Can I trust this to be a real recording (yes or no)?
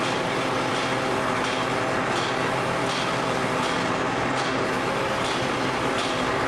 yes